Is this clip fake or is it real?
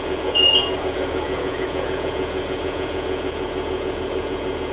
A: fake